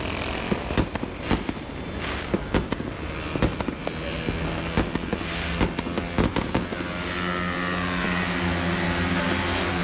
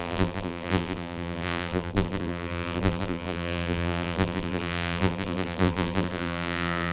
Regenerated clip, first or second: second